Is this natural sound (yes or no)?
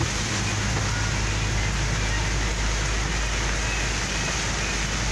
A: yes